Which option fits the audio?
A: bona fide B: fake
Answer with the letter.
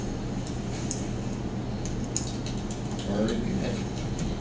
A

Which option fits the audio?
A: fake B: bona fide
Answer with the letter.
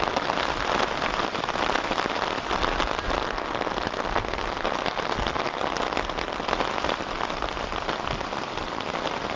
B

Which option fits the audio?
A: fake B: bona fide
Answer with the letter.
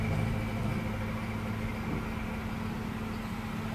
B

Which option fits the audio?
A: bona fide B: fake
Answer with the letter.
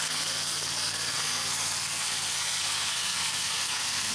B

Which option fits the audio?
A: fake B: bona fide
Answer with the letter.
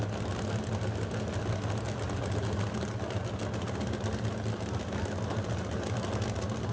B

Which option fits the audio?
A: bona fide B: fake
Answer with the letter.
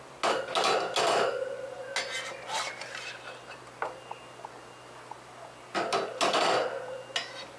A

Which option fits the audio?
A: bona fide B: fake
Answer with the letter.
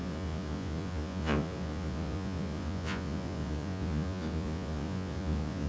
B